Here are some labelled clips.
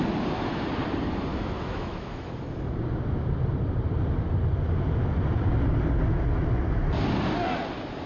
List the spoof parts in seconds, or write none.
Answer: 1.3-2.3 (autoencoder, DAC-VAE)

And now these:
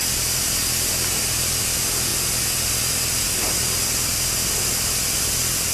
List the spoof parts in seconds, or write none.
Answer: none